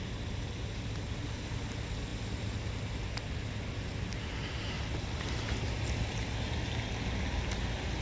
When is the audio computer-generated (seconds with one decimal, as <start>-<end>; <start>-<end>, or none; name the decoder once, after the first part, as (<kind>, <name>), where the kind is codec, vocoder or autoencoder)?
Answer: none